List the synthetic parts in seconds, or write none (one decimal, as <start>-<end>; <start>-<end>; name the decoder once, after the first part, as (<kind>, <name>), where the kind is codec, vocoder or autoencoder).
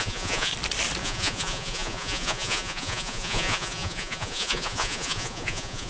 0.0-0.5 (vocoder, Vocos); 1.0-5.9